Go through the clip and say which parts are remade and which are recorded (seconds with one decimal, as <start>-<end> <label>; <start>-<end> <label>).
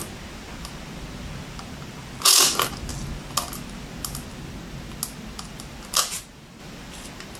0.0-7.4 recorded